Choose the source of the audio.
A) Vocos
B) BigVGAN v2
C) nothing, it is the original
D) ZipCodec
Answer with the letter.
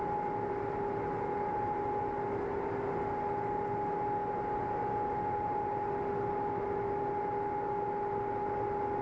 C